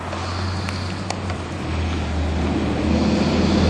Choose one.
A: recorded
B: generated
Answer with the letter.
A